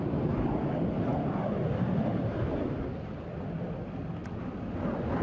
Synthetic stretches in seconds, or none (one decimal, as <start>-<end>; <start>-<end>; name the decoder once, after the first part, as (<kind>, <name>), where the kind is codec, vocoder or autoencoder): none